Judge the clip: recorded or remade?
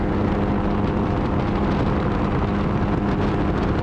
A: recorded